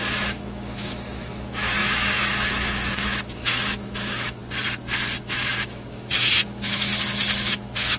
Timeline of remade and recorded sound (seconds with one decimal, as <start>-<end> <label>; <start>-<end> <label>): 0.0-4.4 remade; 4.4-5.2 recorded; 5.2-6.9 remade; 6.9-7.5 recorded; 7.5-8.0 remade